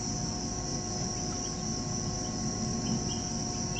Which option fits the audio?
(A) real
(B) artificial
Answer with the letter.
A